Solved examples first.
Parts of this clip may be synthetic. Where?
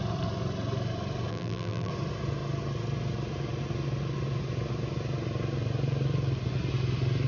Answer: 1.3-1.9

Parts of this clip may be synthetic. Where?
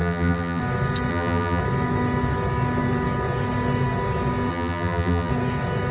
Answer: 0.0-0.6; 1.1-1.6; 4.5-5.3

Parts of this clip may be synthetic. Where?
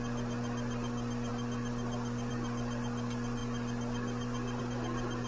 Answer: none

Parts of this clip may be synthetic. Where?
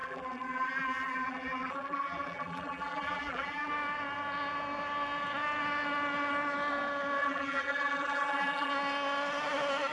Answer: 0.0-3.7; 7.2-8.7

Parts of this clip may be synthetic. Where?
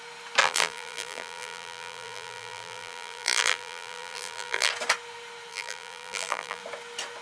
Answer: 0.4-4.7; 5.5-6.6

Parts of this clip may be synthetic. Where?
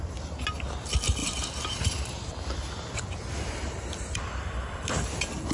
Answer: 1.2-2.3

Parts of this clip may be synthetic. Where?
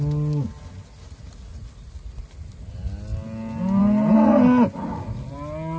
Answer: 1.5-2.2